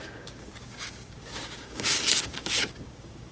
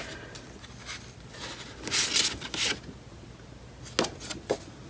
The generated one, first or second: first